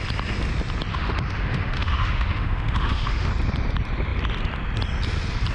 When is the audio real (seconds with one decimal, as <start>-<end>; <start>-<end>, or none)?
0.0-0.9; 3.3-5.5